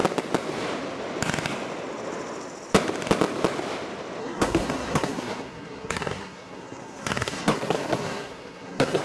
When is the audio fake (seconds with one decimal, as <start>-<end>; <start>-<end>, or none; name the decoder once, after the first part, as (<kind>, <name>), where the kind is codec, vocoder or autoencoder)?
4.2-9.0 (codec, SNAC)